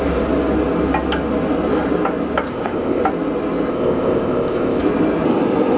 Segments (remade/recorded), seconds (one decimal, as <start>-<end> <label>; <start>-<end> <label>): 0.0-2.5 recorded; 2.5-3.0 remade; 3.0-3.7 recorded; 3.7-4.8 remade; 4.8-5.8 recorded